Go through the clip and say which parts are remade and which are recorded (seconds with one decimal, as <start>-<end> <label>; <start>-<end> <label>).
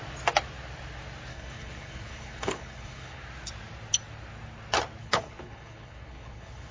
0.0-1.3 recorded; 1.3-3.2 remade; 3.2-5.0 recorded; 5.0-6.7 remade